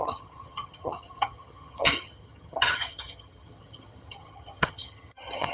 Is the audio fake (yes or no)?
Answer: yes